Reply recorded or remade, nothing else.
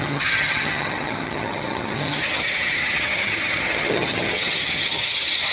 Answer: remade